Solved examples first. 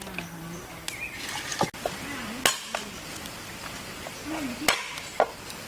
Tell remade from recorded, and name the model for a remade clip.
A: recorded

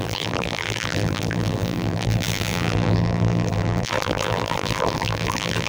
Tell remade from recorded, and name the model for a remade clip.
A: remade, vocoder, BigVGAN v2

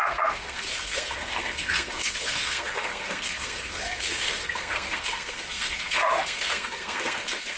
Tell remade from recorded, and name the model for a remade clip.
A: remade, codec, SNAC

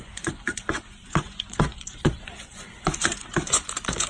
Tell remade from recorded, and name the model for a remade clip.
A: remade, vocoder, Vocos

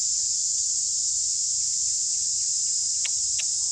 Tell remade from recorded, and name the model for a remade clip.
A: recorded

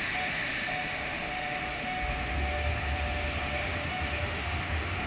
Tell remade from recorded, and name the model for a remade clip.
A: remade, autoencoder, DAC-VAE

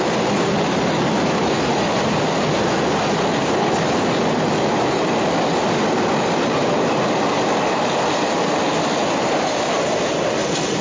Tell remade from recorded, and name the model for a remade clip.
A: recorded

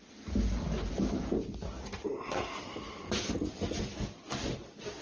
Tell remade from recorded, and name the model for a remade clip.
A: recorded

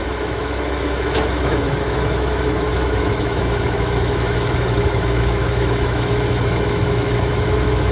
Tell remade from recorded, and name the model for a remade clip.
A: remade, autoencoder, DAC-VAE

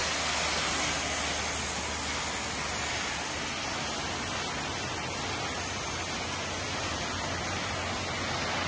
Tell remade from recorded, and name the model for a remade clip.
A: recorded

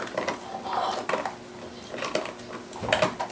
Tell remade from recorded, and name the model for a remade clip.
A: recorded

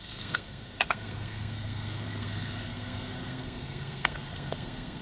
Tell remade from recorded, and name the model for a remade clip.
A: remade, codec, SNAC